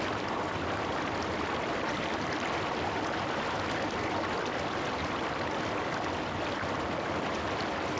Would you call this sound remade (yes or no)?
no